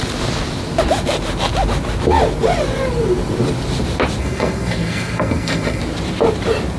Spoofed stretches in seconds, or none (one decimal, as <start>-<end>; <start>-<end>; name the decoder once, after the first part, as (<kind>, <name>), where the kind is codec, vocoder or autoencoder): 4.2-5.8 (codec, SNAC)